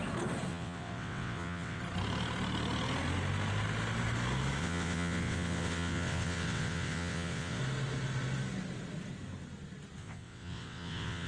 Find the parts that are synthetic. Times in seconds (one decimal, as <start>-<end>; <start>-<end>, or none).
0.5-1.8; 4.6-7.6; 10.0-11.3